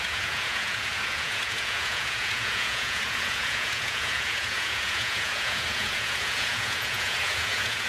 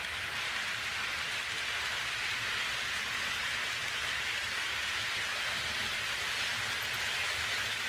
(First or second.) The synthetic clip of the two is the first